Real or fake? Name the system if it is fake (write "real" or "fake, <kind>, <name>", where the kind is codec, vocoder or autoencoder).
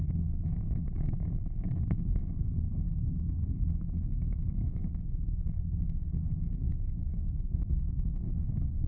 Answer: fake, codec, SNAC